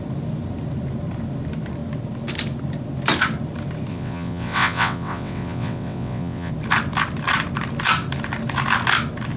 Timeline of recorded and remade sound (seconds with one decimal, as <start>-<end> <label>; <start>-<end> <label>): 0.0-3.9 recorded; 3.9-6.5 remade; 6.5-9.4 recorded